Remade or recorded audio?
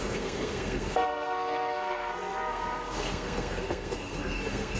remade